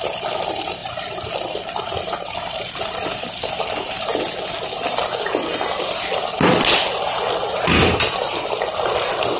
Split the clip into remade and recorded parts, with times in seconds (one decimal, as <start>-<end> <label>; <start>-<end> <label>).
0.0-0.8 remade; 0.8-1.3 recorded; 1.3-4.1 remade; 4.1-9.4 recorded